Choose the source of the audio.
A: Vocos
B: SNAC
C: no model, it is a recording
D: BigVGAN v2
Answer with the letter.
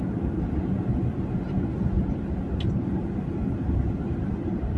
C